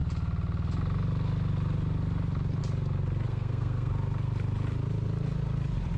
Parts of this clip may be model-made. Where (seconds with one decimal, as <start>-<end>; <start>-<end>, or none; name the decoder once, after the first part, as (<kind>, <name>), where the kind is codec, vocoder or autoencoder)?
3.3-3.9 (codec, SNAC)